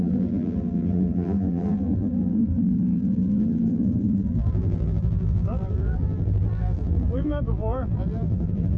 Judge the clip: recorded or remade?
remade